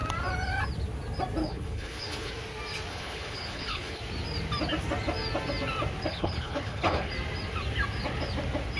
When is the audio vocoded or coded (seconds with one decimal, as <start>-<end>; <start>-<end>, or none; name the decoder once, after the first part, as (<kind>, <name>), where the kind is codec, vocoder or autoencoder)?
1.4-2.3 (codec, HILCodec); 2.9-4.0; 6.1-7.1